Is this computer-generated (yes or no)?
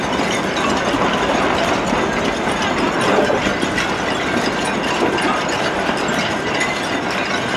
no